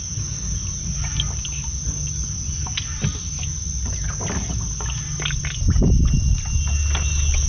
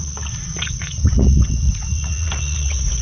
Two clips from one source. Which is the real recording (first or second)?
first